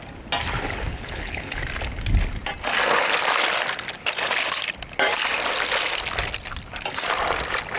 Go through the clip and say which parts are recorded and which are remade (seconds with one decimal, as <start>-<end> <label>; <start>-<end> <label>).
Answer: 0.0-0.9 recorded; 0.9-1.6 remade; 1.6-7.8 recorded